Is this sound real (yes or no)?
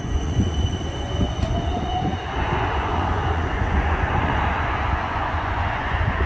no